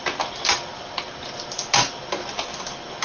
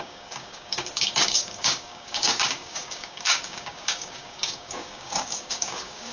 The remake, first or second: second